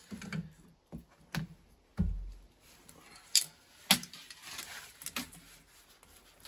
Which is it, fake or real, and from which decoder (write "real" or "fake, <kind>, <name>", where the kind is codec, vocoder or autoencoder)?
real